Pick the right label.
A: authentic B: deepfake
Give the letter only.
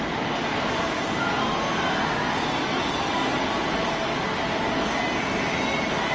A